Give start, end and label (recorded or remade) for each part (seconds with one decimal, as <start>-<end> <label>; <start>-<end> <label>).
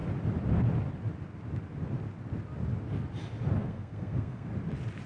0.0-3.6 recorded; 3.6-4.5 remade; 4.5-5.1 recorded